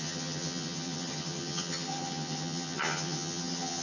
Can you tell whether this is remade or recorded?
remade